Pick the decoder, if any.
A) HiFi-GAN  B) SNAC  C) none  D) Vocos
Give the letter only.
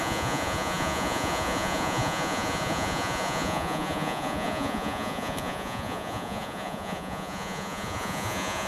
D